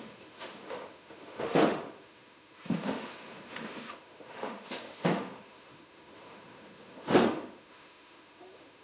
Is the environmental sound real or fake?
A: fake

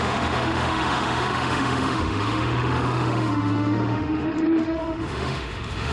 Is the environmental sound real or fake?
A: fake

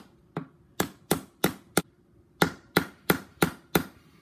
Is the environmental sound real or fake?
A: real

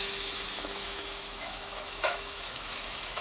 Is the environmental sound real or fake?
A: fake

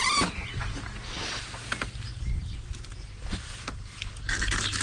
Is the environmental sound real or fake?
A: real